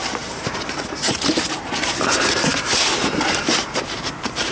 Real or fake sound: fake